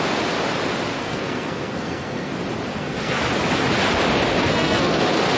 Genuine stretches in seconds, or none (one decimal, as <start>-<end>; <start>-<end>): 0.0-1.0; 2.3-2.7; 3.2-4.4; 5.0-5.4